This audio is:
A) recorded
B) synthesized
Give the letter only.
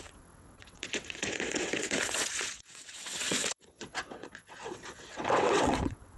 B